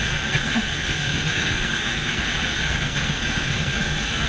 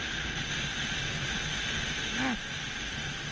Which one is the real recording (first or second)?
second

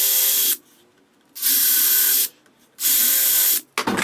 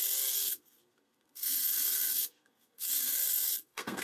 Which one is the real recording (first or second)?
first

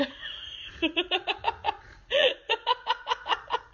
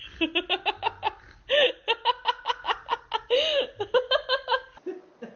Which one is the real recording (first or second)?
second